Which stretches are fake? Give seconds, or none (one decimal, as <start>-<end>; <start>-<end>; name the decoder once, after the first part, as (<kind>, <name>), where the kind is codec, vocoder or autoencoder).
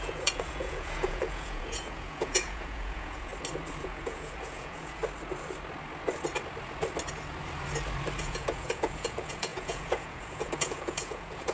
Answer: 0.0-3.3 (vocoder, Vocos); 3.8-5.0; 8.2-11.5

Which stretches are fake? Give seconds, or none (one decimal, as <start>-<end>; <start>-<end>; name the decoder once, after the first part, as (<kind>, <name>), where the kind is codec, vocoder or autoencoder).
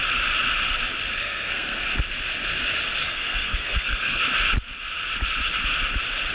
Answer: 1.1-1.8 (codec, SNAC); 3.0-4.2